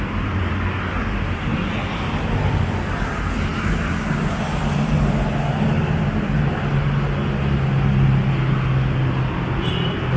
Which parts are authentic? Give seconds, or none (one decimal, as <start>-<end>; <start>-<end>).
0.0-10.2